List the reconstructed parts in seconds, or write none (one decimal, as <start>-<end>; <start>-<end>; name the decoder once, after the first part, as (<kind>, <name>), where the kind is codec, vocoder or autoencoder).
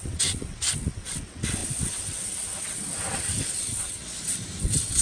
0.0-4.0 (vocoder, WaveNeXt); 4.6-5.0